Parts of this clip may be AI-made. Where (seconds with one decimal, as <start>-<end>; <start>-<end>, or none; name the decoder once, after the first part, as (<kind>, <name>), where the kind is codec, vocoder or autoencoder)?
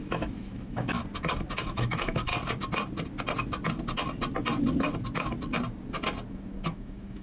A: 0.0-1.0 (autoencoder, DAC-VAE); 1.6-2.3; 6.3-7.2